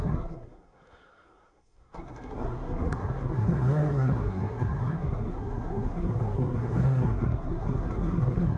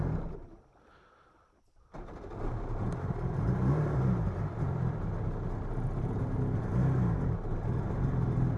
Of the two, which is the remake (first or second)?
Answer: first